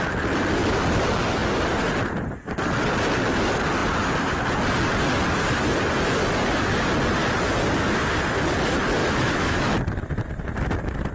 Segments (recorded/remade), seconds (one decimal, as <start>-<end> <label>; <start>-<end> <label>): 0.0-9.0 recorded; 9.0-9.7 remade; 9.7-11.1 recorded